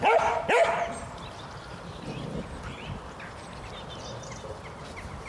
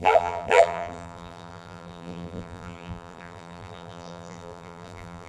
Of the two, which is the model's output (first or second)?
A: second